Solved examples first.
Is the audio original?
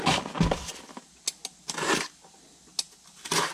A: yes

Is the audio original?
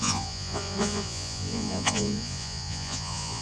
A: no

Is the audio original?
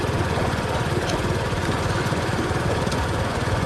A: no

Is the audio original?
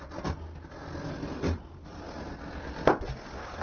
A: yes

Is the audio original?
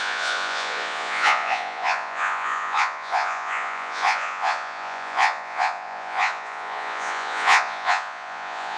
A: no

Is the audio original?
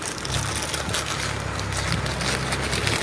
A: yes